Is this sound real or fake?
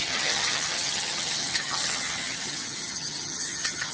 fake